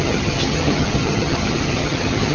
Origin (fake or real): fake